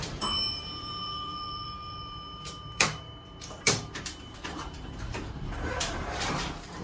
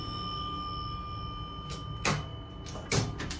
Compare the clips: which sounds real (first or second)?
second